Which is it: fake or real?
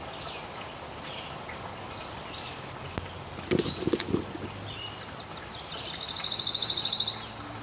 real